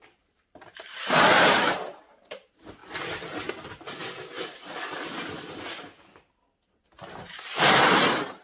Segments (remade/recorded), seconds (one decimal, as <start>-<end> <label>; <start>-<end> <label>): 0.0-2.8 remade; 2.8-7.1 recorded; 7.1-8.4 remade